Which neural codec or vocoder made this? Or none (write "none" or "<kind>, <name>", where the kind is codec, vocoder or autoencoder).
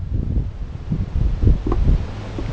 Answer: none